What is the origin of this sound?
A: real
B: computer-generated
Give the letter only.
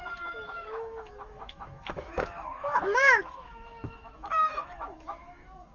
B